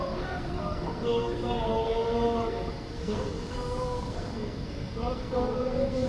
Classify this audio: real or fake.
fake